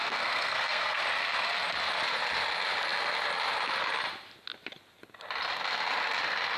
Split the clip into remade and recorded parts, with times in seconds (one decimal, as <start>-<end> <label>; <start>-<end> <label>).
0.0-1.0 remade; 1.0-6.6 recorded